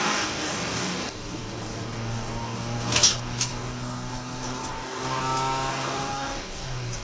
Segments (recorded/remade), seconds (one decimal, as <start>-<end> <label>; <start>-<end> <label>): 0.0-5.2 remade; 5.2-5.7 recorded; 5.7-7.0 remade